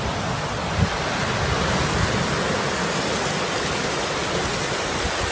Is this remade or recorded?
recorded